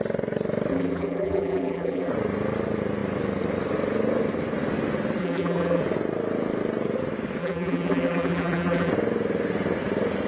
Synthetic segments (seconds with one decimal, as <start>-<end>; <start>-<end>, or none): 0.7-2.1; 5.2-5.8; 7.4-8.9